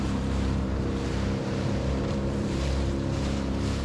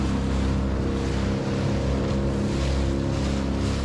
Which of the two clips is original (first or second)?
second